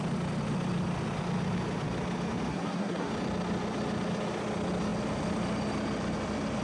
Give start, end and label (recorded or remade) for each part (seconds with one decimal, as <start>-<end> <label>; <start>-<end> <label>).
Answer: 0.0-2.5 recorded; 2.5-3.1 remade; 3.1-6.6 recorded